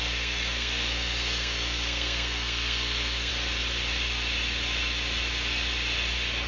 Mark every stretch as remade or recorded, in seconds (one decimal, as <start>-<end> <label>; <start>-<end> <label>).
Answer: 0.0-3.3 remade; 3.3-6.5 recorded